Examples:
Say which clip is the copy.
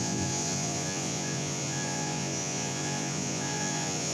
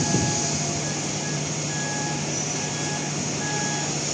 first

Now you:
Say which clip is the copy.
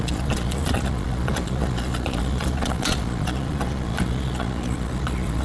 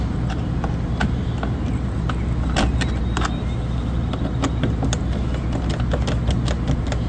first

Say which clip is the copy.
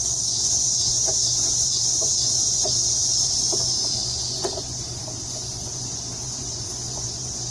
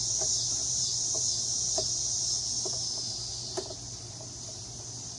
first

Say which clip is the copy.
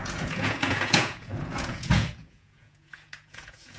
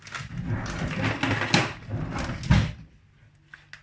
first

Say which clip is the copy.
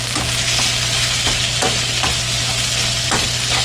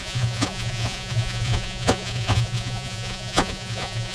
second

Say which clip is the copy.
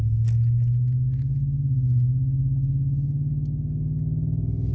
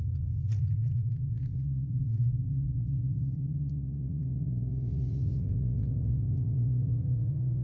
second